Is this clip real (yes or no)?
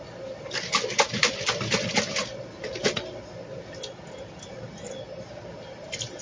yes